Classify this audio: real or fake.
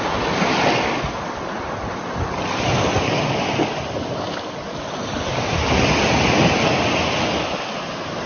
real